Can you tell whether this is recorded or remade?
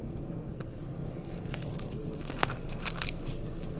remade